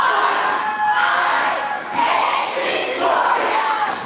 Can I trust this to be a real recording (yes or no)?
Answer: no